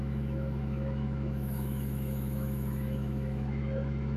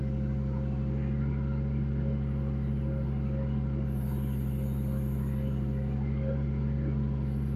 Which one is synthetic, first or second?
first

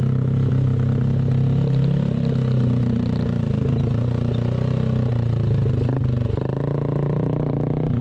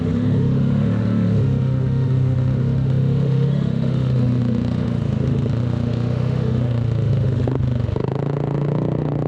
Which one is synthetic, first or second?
second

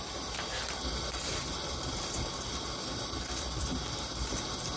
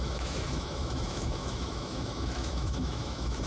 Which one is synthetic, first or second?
second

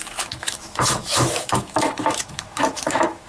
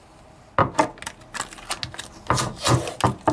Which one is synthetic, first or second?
first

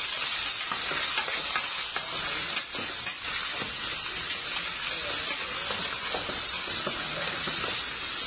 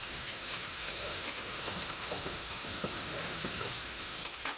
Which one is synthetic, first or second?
second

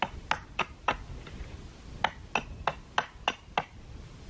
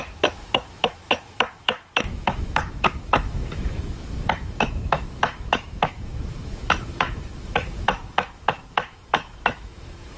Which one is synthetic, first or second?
second